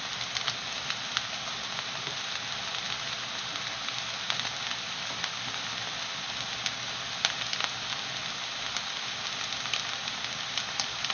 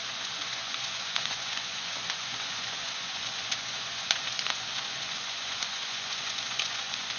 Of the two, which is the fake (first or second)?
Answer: second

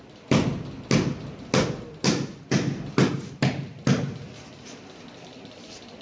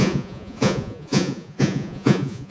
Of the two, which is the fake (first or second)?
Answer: second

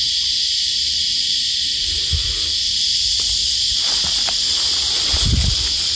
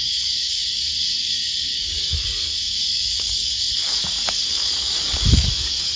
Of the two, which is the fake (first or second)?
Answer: second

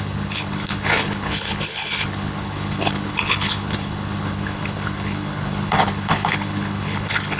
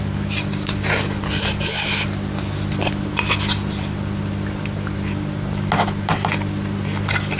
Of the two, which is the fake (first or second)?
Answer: first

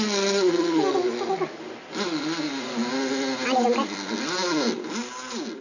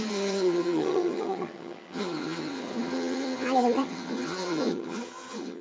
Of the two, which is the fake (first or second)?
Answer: second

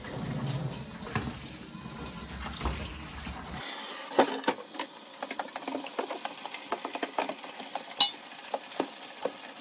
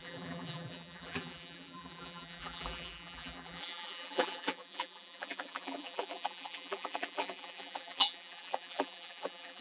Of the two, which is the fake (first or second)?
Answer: second